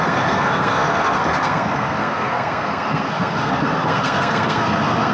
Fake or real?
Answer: fake